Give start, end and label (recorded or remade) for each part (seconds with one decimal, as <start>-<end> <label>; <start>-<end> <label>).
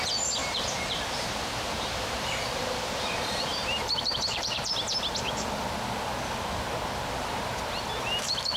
0.0-0.4 recorded; 0.4-4.7 remade; 4.7-8.6 recorded